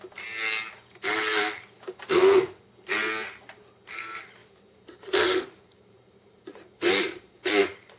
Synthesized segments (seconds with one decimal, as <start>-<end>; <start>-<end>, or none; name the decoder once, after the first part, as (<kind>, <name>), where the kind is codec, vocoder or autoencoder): 4.4-7.5 (vocoder, BigVGAN v2)